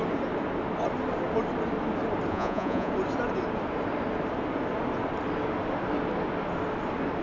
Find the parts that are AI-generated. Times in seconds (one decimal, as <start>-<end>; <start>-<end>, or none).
2.3-2.9